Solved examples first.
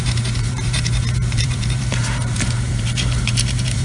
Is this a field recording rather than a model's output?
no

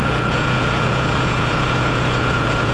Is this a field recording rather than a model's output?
no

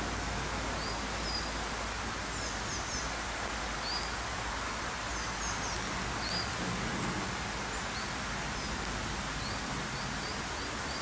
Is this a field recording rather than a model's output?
yes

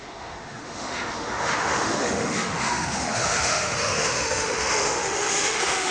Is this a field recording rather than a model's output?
no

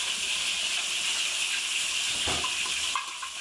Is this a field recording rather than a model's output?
yes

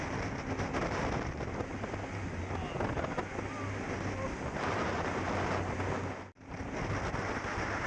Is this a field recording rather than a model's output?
yes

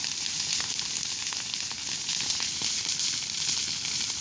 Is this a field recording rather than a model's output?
yes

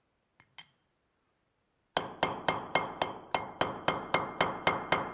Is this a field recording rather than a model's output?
yes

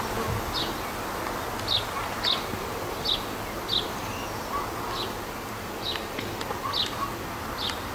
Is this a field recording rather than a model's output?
yes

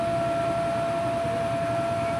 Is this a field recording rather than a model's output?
yes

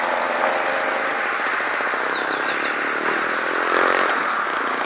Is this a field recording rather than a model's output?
yes